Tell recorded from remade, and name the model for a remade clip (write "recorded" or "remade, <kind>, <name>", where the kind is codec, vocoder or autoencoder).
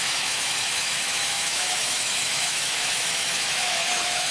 remade, autoencoder, DAC-VAE